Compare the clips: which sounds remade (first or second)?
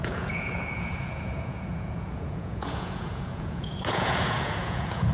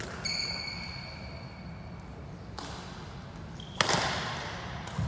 first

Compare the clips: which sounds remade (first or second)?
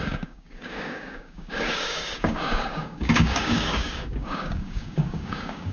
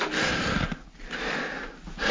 first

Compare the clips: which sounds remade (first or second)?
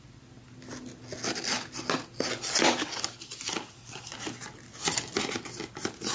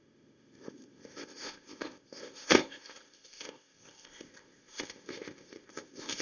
second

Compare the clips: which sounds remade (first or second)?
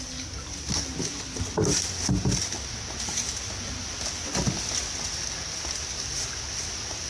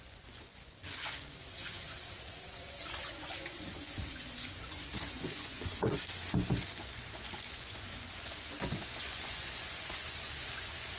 second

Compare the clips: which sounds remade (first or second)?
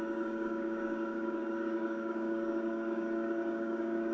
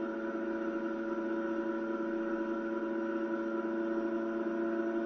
first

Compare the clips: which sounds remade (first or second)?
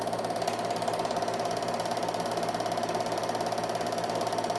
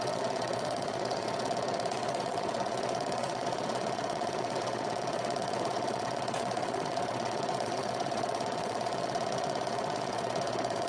second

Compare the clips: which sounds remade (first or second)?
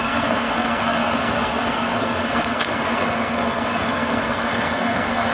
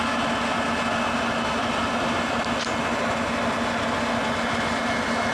first